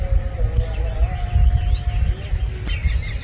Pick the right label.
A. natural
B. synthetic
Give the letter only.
A